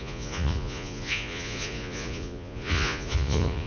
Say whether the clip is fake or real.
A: fake